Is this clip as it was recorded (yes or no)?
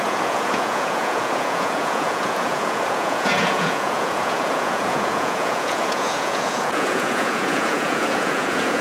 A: no